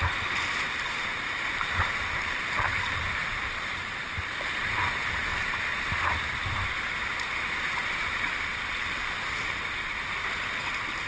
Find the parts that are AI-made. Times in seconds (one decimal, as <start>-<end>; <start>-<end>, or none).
1.1-4.6